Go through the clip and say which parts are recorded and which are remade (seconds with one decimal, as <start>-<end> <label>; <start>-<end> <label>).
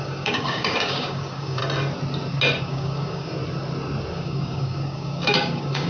0.0-1.6 remade; 1.6-2.6 recorded; 2.6-3.4 remade; 3.4-4.1 recorded; 4.1-5.9 remade